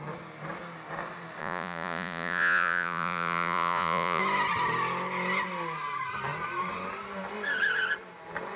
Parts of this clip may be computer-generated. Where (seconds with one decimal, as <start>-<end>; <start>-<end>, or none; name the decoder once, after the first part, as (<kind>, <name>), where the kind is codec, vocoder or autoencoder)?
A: 1.4-4.2 (vocoder, Vocos)